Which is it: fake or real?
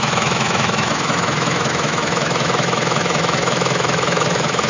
fake